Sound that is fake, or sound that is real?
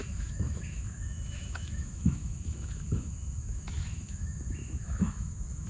fake